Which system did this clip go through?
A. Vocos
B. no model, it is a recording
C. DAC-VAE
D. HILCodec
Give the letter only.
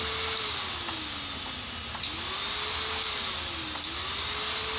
B